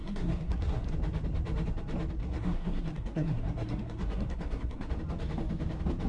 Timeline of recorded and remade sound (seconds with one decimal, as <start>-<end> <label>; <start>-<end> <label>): 0.0-0.9 remade; 0.9-2.2 recorded; 2.2-4.9 remade; 4.9-6.1 recorded